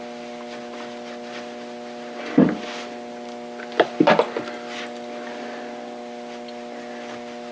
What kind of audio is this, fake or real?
real